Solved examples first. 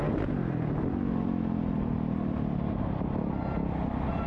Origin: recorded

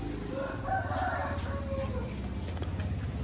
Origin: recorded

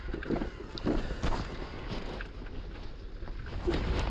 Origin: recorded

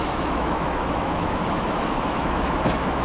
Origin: remade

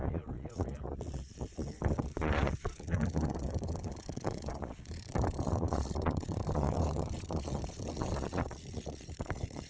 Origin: remade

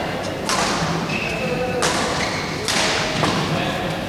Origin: recorded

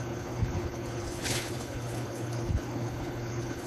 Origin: remade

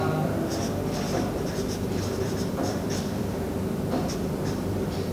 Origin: remade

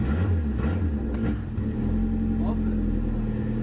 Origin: recorded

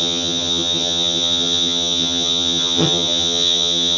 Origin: remade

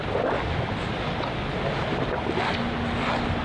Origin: recorded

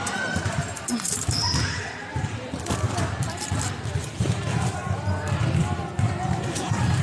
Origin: recorded